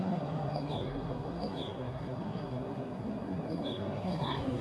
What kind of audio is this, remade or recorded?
remade